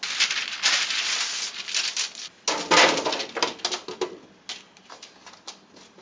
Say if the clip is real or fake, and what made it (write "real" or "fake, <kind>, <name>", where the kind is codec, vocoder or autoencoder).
real